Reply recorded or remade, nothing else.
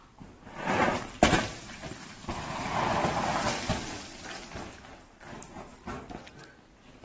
recorded